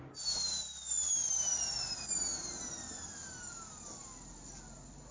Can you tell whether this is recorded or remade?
recorded